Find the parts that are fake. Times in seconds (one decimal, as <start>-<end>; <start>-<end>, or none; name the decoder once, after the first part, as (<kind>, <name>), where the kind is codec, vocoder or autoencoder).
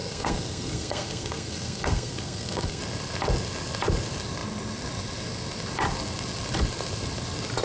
0.0-2.8 (codec, SNAC)